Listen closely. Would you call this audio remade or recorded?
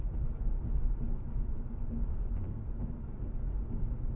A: recorded